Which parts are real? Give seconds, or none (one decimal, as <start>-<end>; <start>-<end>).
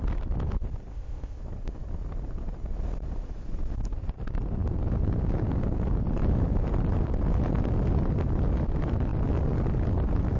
0.0-0.9; 1.4-10.4